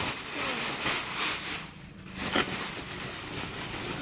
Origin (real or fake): real